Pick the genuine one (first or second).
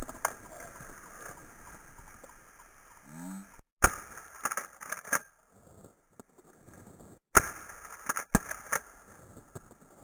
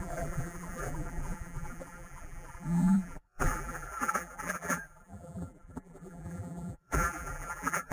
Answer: first